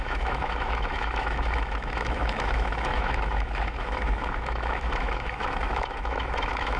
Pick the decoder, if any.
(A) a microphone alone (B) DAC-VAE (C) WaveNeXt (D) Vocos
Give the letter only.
B